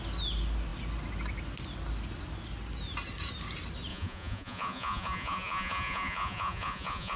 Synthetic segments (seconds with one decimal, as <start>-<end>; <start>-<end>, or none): 3.9-7.2